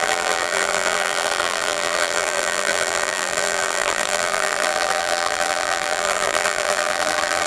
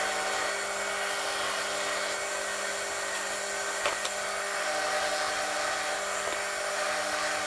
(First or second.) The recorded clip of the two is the second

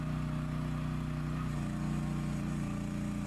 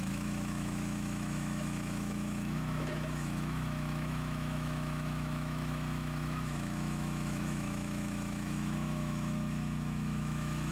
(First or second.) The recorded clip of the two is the first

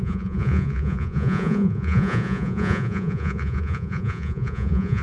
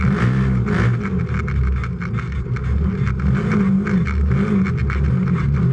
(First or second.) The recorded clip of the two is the second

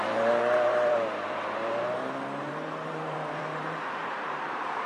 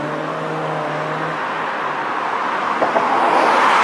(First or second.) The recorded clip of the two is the second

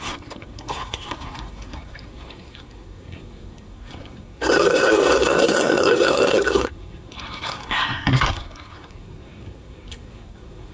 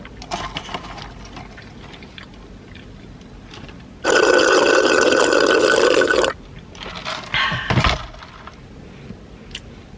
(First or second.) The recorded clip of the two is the second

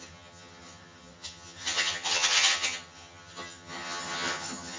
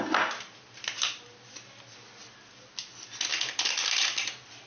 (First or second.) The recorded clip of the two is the second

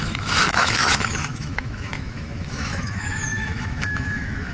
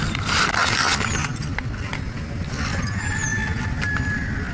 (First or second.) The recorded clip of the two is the second